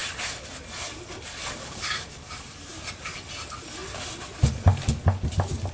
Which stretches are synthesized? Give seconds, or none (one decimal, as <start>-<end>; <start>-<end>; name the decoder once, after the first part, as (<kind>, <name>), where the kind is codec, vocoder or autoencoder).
1.4-2.3 (codec, DAC)